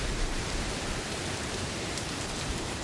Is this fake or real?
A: fake